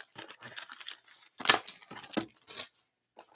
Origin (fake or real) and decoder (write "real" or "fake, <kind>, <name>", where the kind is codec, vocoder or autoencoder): real